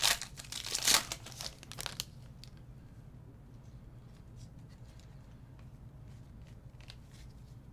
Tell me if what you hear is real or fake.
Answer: real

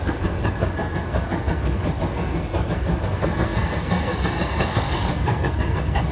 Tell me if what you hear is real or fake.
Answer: fake